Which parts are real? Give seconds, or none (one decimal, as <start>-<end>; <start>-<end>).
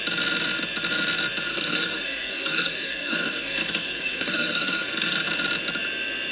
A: 0.0-1.5; 5.3-6.3